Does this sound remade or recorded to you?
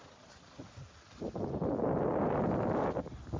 recorded